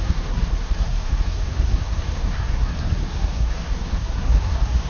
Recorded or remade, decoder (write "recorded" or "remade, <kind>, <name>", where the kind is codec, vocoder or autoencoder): remade, codec, SNAC